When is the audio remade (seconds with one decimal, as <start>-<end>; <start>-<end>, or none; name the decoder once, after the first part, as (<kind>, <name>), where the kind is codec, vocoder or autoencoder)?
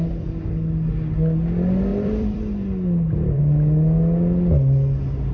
1.9-3.4 (vocoder, BigVGAN v2)